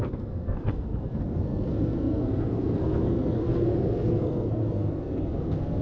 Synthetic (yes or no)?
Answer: yes